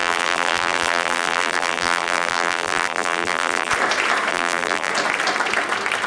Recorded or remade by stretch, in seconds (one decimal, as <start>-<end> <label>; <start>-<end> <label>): 0.0-3.7 remade; 3.7-4.3 recorded; 4.3-4.9 remade; 4.9-6.1 recorded